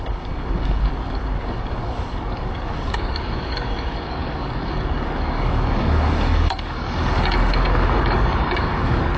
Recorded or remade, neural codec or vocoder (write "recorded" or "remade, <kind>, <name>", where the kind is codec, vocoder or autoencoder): remade, codec, DAC